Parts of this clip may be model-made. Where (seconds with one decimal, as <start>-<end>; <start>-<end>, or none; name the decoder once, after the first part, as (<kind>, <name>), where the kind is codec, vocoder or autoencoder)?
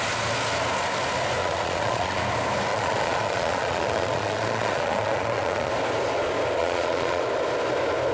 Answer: 1.4-2.2 (vocoder, Vocos); 2.7-5.7; 6.6-7.2